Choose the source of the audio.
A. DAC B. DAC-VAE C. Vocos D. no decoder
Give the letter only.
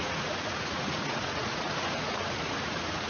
C